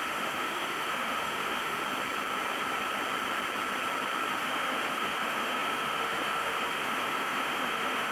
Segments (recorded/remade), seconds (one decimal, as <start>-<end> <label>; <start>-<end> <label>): 0.0-1.8 remade; 1.8-4.4 recorded; 4.4-8.1 remade